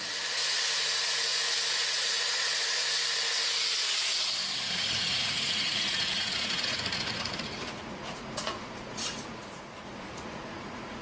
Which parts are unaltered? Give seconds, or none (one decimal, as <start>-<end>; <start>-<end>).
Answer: 2.8-4.6